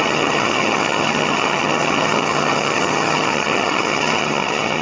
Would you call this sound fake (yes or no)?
yes